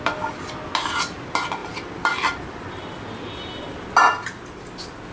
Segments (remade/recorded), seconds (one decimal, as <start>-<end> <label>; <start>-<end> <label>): 0.0-1.6 recorded; 1.6-2.6 remade; 2.6-5.1 recorded